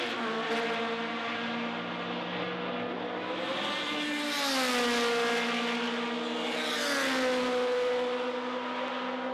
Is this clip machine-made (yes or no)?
no